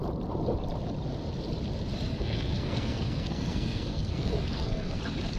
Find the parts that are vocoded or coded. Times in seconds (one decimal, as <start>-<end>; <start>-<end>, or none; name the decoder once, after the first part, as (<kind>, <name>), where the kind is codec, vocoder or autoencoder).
2.1-5.0 (codec, SNAC)